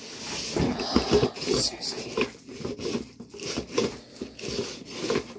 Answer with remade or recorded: recorded